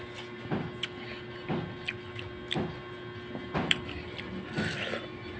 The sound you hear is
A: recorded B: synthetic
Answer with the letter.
A